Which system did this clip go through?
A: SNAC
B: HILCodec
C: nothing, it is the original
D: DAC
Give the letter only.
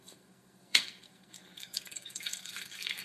A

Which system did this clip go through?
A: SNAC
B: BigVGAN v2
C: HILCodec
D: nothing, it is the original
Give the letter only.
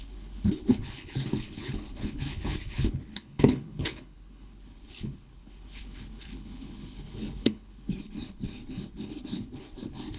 C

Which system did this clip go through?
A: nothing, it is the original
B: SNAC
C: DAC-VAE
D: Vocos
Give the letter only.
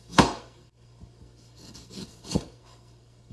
B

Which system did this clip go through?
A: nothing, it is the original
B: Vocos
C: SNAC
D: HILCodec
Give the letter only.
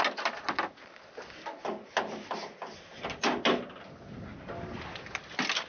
A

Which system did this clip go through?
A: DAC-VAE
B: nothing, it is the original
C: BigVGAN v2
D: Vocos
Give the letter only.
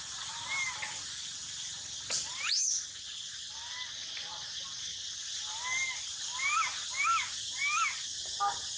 B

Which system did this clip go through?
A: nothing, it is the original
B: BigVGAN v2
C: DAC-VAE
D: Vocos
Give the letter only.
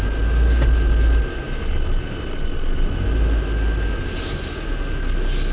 A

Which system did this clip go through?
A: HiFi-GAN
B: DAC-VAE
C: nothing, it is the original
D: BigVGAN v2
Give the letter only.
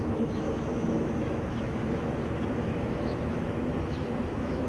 B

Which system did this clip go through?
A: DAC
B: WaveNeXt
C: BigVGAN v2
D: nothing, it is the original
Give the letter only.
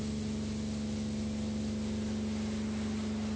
D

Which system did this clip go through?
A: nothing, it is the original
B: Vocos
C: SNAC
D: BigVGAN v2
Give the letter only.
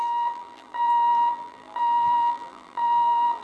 D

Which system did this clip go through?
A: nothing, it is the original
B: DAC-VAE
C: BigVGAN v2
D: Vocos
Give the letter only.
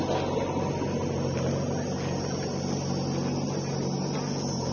A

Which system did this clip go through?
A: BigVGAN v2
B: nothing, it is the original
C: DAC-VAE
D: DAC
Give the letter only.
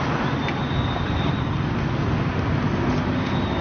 B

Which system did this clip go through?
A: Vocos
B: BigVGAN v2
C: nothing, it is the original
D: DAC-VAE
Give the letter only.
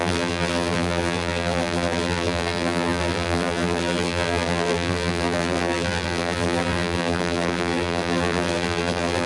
B